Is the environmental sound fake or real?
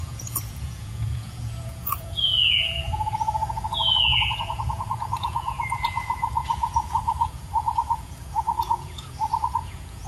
fake